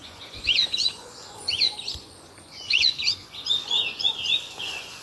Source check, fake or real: fake